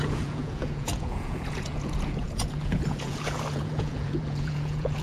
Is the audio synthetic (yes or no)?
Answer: yes